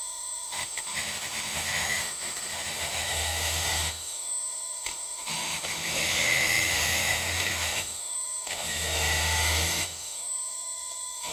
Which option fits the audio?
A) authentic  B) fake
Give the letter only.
B